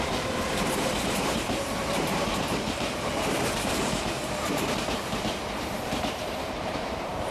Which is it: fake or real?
fake